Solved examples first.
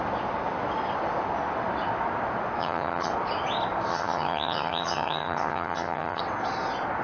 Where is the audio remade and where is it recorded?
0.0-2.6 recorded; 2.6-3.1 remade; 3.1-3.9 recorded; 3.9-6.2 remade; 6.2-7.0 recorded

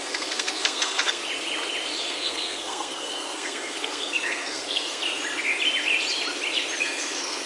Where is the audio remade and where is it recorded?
0.0-1.2 remade; 1.2-2.0 recorded; 2.0-5.0 remade; 5.0-6.8 recorded; 6.8-7.5 remade

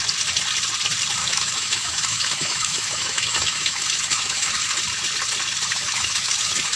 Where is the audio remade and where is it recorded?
0.0-1.2 recorded; 1.2-4.6 remade; 4.6-5.7 recorded; 5.7-6.8 remade

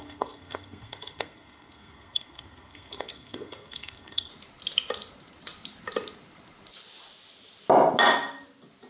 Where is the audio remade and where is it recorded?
0.0-4.3 remade; 4.3-8.9 recorded